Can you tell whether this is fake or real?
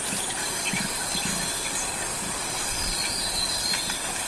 real